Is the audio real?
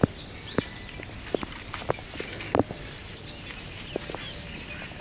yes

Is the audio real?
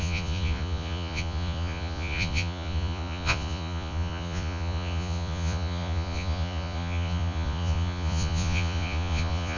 no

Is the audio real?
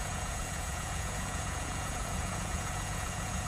no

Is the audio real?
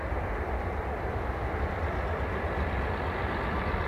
yes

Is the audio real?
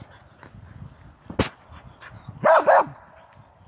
yes